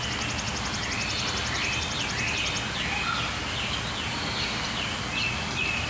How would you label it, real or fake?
real